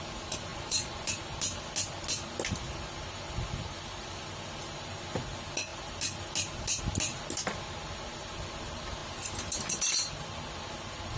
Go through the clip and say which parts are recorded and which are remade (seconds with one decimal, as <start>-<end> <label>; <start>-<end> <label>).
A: 0.0-0.5 recorded; 0.5-1.1 remade; 1.1-11.2 recorded